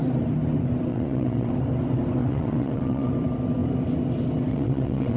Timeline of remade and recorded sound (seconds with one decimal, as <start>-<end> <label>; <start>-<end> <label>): 0.0-0.9 recorded; 0.9-1.5 remade; 1.5-2.2 recorded; 2.2-3.1 remade; 3.1-4.5 recorded; 4.5-5.2 remade